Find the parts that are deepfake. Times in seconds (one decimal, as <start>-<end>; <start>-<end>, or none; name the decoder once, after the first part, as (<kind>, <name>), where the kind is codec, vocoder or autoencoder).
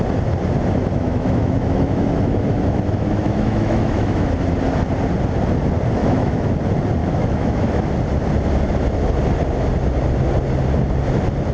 0.9-4.3 (autoencoder, DAC-VAE); 6.0-6.5; 7.0-7.9